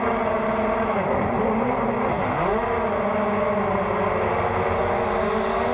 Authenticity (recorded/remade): recorded